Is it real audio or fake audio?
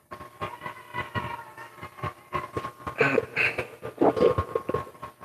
real